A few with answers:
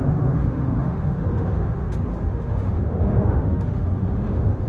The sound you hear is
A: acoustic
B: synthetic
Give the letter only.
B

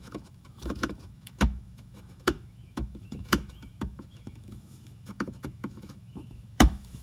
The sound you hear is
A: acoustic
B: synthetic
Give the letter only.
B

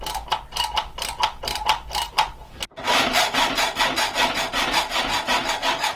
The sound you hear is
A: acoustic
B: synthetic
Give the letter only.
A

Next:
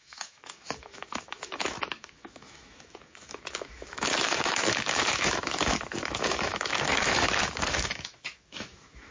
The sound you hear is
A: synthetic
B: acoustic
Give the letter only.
A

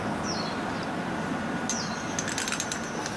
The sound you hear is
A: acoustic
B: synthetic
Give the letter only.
A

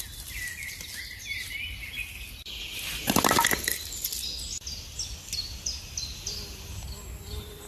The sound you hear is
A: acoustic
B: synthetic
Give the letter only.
A